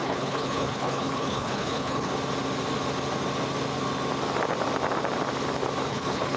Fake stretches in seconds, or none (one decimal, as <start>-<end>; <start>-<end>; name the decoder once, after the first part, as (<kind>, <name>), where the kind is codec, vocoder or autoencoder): 0.0-2.1 (codec, HILCodec); 5.9-6.4